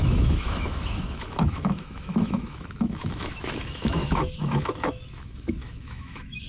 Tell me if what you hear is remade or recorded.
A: remade